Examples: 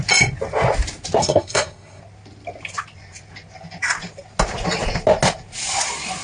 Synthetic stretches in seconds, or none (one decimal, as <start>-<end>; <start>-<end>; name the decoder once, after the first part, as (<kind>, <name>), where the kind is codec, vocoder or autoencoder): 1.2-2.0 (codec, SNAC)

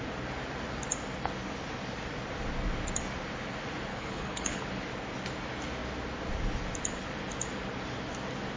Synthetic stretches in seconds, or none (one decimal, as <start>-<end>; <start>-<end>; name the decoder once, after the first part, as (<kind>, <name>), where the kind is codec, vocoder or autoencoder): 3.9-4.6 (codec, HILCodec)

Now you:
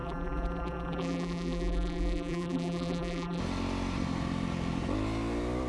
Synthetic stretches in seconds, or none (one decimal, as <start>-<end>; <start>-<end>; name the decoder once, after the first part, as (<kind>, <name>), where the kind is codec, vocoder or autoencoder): 0.0-3.4 (vocoder, BigVGAN v2)

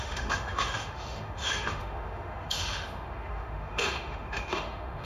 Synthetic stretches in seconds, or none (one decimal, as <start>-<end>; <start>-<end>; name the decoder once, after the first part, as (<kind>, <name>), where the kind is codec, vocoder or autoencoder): 0.0-5.1 (autoencoder, DAC-VAE)